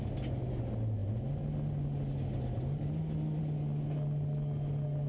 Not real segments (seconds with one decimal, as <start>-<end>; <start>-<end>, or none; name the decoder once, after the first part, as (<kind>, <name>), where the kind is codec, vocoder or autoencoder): none